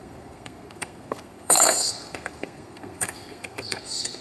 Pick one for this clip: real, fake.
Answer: fake